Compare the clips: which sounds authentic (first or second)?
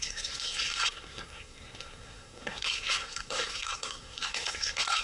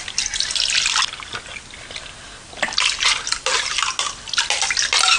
second